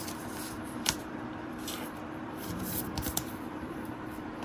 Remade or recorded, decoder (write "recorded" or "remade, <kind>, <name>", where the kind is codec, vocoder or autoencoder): remade, vocoder, BigVGAN v2